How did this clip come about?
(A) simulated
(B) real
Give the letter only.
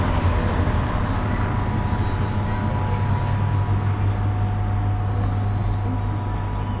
B